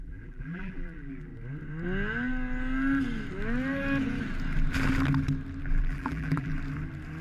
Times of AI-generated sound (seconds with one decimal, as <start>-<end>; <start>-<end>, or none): 0.0-1.3; 5.6-6.5